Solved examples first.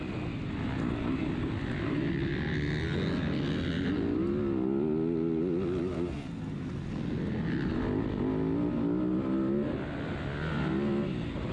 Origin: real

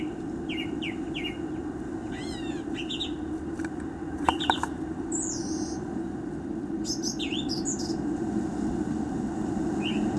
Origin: real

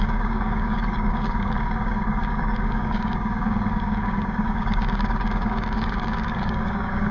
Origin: fake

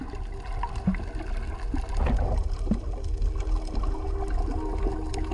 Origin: real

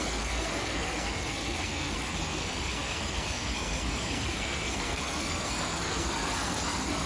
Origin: fake